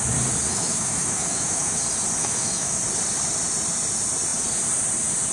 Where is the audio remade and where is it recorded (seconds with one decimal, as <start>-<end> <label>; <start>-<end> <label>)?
0.0-0.5 recorded; 0.5-1.8 remade; 1.8-2.2 recorded; 2.2-2.8 remade; 2.8-5.3 recorded